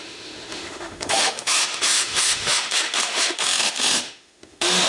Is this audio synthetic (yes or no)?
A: yes